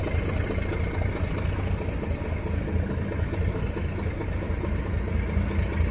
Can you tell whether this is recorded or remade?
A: recorded